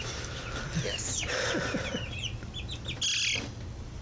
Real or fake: real